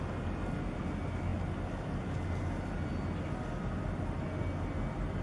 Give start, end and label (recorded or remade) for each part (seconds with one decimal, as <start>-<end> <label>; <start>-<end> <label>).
0.0-5.2 recorded